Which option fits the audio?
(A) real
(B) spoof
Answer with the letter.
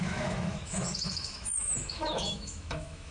B